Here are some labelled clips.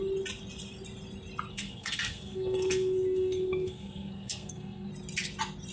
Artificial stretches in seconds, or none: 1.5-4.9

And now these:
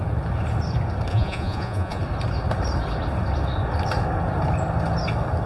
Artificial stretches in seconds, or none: 1.1-2.0

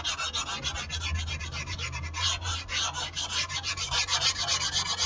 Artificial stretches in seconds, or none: 1.4-4.5

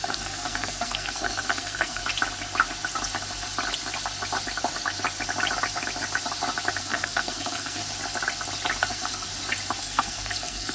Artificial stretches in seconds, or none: 0.0-2.0; 6.8-7.8; 8.8-9.3; 9.8-10.7